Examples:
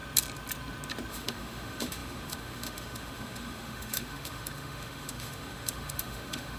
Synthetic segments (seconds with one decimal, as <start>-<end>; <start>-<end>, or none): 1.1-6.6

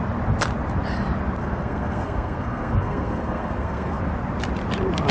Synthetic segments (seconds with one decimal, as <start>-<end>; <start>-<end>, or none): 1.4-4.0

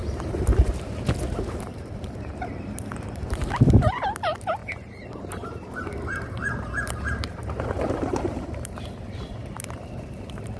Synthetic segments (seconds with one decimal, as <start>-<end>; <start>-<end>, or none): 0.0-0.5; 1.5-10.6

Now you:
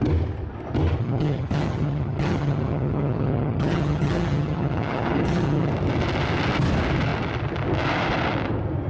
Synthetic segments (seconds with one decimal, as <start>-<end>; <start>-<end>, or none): 1.0-5.7

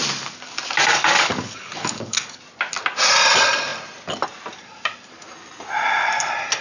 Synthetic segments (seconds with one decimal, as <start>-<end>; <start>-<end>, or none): 0.9-2.3

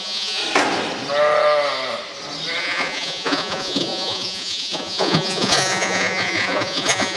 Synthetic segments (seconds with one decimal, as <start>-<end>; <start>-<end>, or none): 0.0-0.4; 2.6-7.2